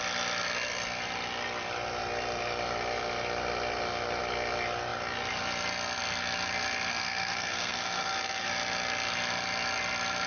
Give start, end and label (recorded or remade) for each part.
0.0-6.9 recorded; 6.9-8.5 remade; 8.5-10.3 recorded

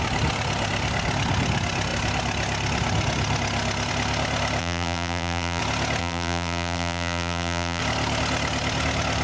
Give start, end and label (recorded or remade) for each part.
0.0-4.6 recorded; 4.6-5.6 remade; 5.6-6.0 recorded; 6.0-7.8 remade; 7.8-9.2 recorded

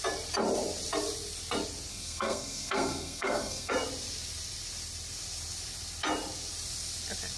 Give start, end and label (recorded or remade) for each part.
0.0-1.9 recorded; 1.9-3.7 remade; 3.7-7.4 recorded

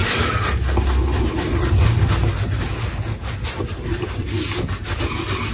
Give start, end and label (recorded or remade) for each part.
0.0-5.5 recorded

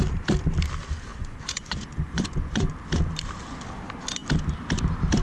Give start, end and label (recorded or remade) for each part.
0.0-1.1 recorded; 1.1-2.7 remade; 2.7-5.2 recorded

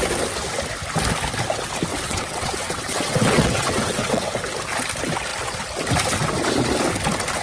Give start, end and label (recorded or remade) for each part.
0.0-1.9 recorded; 1.9-4.3 remade; 4.3-7.4 recorded